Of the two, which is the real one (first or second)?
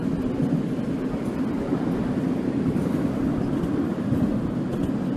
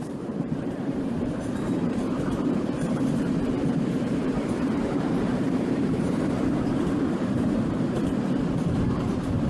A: first